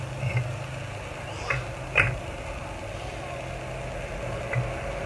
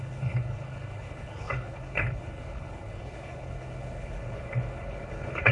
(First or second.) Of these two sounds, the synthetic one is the second